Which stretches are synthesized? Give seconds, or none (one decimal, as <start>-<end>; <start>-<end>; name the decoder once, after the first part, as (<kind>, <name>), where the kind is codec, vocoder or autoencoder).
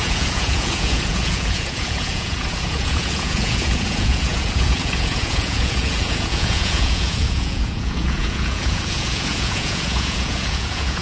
0.0-11.0 (vocoder, Vocos)